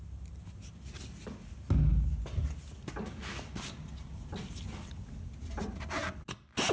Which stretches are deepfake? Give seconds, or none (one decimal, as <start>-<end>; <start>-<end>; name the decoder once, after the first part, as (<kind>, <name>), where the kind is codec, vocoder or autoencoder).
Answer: none